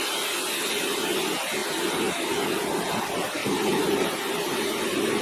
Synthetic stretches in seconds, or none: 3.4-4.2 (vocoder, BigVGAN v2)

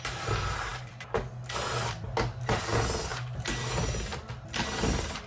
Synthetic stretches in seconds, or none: none

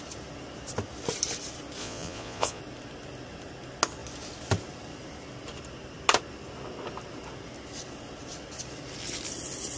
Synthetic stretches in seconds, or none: 1.8-2.6 (vocoder, Vocos)

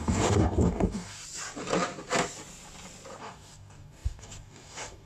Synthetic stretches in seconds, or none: 0.0-1.2 (codec, DAC); 3.2-5.1

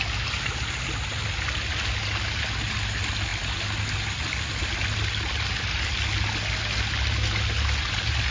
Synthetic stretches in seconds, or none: none